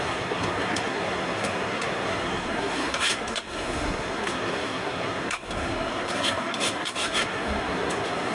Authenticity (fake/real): fake